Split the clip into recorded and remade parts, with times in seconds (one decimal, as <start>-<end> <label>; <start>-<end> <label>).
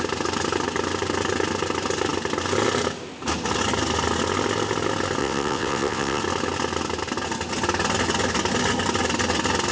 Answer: 0.0-5.2 recorded; 5.2-6.2 remade; 6.2-9.7 recorded